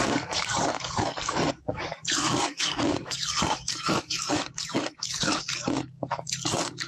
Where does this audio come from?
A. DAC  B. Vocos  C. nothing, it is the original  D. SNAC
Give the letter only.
A